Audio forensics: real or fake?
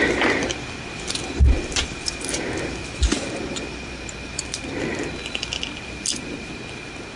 real